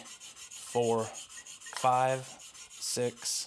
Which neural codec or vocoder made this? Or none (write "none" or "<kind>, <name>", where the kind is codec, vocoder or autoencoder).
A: none